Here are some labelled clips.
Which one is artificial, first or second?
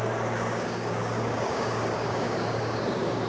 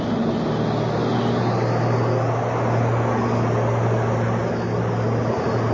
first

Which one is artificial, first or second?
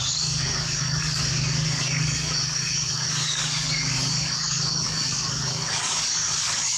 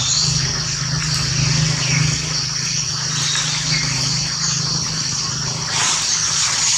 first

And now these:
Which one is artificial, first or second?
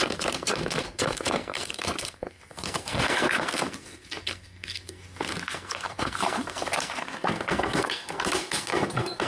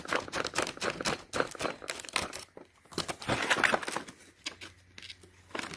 first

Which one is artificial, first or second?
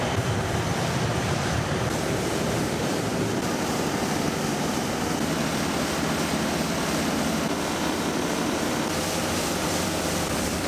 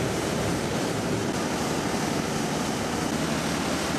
first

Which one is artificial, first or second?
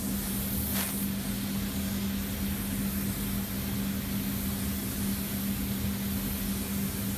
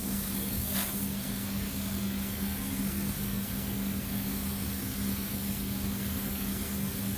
second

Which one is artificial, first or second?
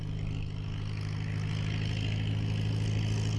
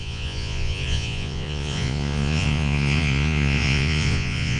second